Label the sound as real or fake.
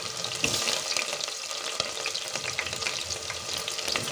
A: fake